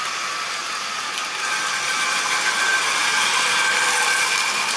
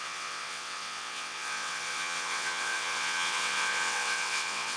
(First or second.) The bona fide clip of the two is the first